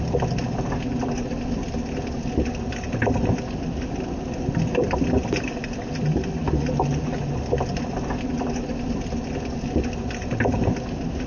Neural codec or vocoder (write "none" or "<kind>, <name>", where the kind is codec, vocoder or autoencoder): none